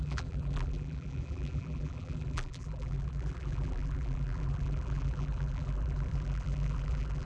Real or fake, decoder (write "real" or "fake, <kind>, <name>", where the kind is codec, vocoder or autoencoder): fake, vocoder, BigVGAN v2